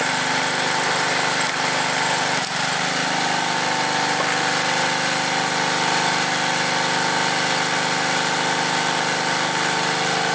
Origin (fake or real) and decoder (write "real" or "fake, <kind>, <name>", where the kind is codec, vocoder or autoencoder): real